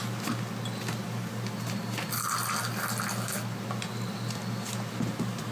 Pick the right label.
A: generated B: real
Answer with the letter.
B